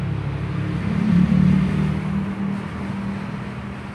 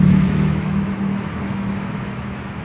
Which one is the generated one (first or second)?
second